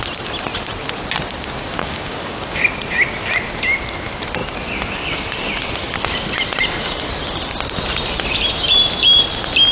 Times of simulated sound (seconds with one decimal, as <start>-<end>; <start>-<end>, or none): 1.8-2.6